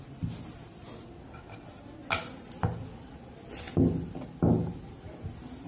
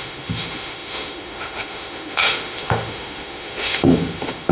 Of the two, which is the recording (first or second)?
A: first